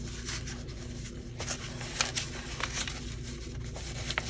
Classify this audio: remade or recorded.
recorded